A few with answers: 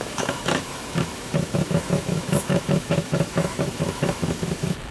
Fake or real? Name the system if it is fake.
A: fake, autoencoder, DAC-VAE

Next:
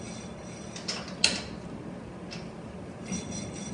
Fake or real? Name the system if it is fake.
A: real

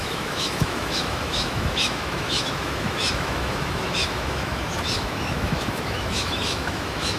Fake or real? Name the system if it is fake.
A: fake, autoencoder, DAC-VAE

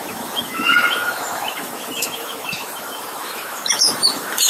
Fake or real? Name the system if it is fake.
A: fake, autoencoder, DAC-VAE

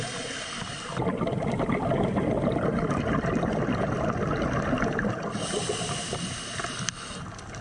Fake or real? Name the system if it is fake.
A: real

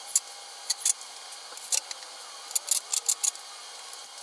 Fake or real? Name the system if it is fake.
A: real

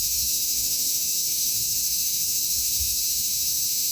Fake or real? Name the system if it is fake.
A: fake, autoencoder, DAC-VAE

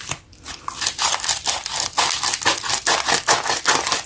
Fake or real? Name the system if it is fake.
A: real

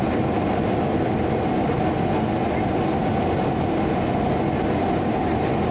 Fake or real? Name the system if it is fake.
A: real